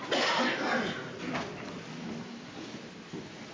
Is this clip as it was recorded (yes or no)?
yes